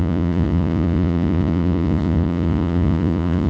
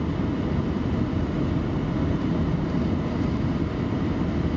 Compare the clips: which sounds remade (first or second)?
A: first